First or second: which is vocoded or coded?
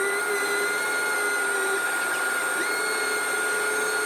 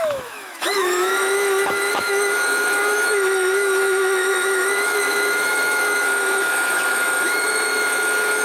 second